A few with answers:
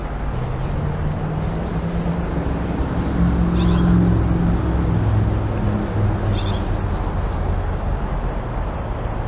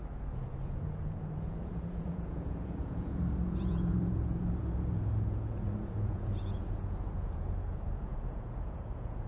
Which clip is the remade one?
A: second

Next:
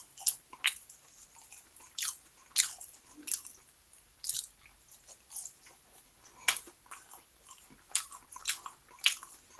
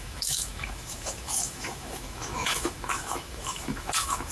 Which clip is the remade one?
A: second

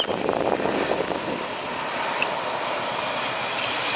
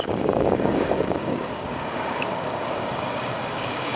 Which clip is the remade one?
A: second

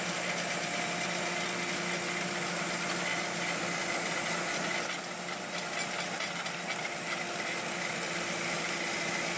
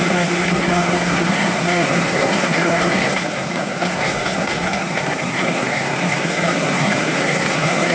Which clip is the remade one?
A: second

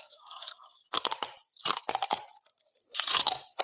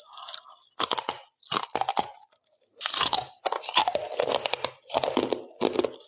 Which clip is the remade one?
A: first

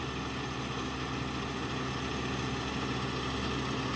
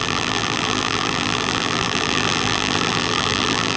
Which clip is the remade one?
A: second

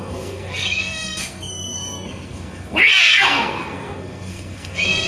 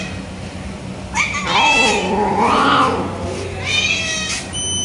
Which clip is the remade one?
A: first